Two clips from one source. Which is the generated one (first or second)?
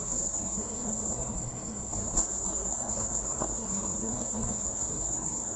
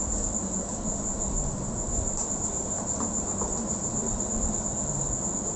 first